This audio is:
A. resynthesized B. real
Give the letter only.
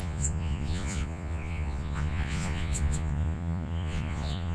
A